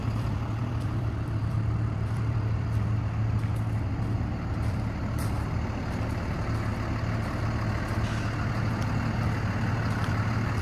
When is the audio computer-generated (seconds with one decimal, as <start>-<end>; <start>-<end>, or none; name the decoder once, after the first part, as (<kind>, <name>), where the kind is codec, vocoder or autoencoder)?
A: 0.0-2.8 (vocoder, BigVGAN v2)